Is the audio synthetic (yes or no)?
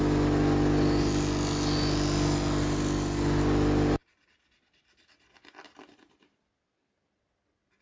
no